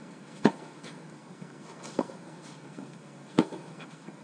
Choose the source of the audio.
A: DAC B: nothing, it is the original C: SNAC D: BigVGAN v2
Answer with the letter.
C